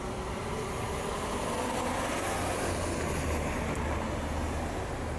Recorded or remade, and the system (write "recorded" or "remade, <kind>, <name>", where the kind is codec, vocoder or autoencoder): recorded